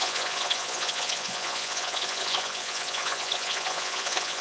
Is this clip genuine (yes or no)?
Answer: no